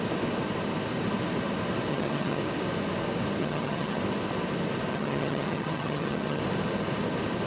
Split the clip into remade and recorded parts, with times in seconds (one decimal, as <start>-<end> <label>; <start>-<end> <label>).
0.0-1.9 recorded; 1.9-2.4 remade; 2.4-3.4 recorded; 3.4-4.0 remade; 4.0-4.9 recorded; 4.9-6.4 remade; 6.4-7.5 recorded